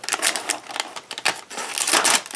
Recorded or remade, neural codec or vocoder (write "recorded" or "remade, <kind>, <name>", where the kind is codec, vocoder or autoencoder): recorded